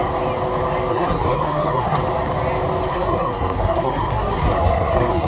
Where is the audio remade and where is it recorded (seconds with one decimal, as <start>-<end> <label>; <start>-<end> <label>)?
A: 0.0-0.9 recorded; 0.9-2.0 remade; 2.0-2.9 recorded; 2.9-5.3 remade